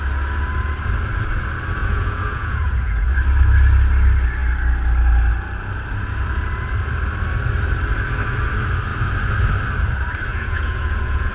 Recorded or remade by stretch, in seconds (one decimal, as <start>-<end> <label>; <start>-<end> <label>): 0.0-1.8 recorded; 1.8-3.1 remade; 3.1-10.3 recorded; 10.3-11.3 remade